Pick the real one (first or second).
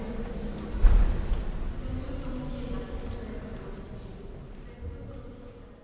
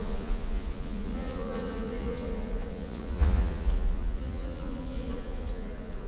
first